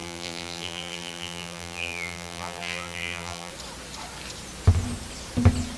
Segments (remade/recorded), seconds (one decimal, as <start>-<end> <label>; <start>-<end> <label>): 0.0-3.5 remade; 3.5-5.8 recorded